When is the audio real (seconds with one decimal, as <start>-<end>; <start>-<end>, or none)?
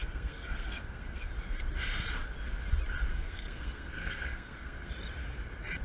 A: 1.3-3.1; 4.9-5.8